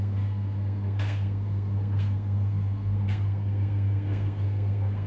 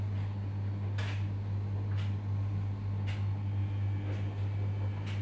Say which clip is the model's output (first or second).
first